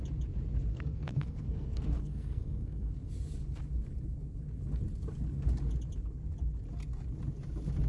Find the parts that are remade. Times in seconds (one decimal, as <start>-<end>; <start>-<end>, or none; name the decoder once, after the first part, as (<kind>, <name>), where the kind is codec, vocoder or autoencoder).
0.7-3.1 (codec, SNAC)

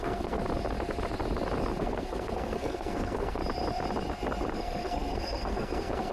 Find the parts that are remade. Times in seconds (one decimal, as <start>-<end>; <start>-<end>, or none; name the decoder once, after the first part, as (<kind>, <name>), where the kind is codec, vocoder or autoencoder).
0.0-0.4 (codec, SNAC); 1.8-3.4; 4.5-6.1

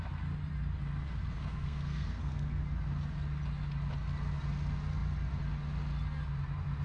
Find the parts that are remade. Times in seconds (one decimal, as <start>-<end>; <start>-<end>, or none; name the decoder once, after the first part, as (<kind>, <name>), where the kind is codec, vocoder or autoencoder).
1.2-2.6 (codec, SNAC)

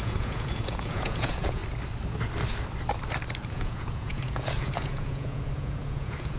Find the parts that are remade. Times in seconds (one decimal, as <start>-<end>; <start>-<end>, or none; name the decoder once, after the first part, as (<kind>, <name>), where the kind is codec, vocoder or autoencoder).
0.0-1.6 (vocoder, Vocos); 3.5-6.4

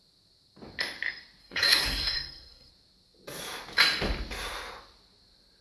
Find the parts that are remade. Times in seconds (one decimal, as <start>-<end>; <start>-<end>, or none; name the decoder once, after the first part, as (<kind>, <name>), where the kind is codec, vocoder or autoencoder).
1.4-2.7 (codec, SNAC)

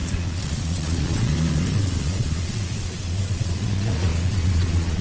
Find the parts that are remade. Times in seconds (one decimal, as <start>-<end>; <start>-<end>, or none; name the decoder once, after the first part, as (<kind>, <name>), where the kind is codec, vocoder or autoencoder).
0.0-5.0 (vocoder, Vocos)

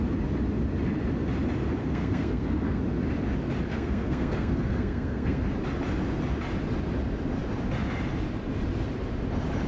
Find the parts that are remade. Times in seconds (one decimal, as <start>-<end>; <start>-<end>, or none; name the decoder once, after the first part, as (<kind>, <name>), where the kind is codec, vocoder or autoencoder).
1.8-2.8 (codec, SNAC); 3.7-5.4